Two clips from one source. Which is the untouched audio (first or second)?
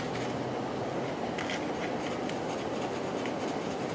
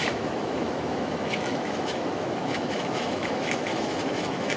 first